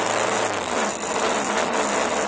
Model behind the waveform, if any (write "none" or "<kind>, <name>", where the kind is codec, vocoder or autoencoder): none